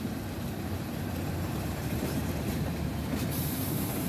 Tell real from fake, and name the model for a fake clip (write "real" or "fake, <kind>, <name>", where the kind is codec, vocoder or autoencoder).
fake, vocoder, BigVGAN v2